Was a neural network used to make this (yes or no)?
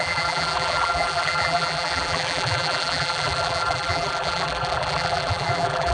yes